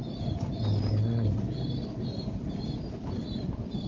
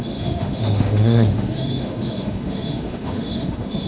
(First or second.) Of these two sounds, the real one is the first